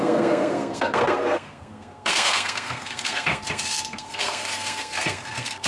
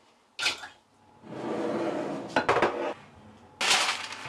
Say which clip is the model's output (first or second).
first